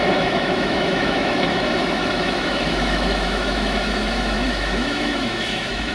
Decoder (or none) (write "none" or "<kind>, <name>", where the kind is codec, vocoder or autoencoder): autoencoder, DAC-VAE